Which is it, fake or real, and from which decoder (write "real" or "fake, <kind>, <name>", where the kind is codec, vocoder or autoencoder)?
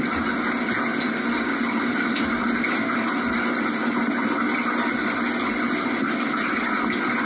real